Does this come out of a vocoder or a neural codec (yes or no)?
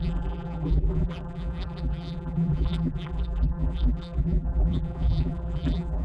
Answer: yes